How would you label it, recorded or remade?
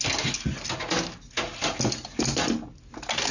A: recorded